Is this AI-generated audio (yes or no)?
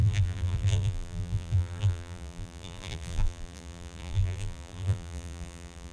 yes